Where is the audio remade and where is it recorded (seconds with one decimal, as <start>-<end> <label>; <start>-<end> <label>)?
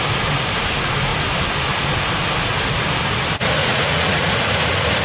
0.0-3.6 recorded; 3.6-4.4 remade; 4.4-5.0 recorded